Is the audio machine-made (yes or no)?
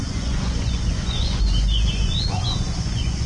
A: yes